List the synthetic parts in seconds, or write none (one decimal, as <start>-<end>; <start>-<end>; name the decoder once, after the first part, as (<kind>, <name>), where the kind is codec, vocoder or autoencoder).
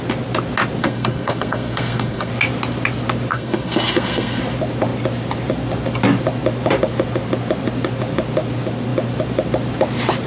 0.8-2.3 (codec, SNAC); 3.3-4.4